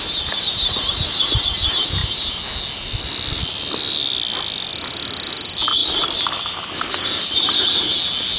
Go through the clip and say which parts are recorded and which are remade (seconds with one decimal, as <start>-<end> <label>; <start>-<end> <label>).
0.0-5.8 recorded; 5.8-7.3 remade; 7.3-8.4 recorded